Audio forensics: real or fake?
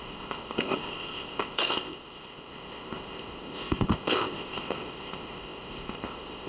fake